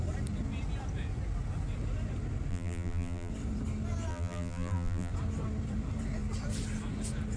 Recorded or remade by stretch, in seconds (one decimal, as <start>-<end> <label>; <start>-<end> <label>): 0.0-2.5 recorded; 2.5-3.3 remade; 3.3-4.1 recorded; 4.1-5.1 remade; 5.1-7.4 recorded